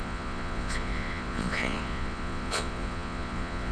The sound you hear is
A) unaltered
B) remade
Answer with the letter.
B